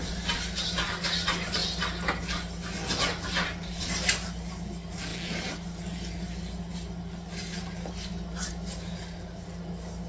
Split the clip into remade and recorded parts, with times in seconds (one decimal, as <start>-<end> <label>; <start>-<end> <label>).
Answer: 0.0-10.1 recorded